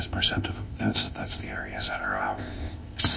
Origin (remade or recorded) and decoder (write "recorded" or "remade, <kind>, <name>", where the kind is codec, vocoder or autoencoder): remade, codec, ZipCodec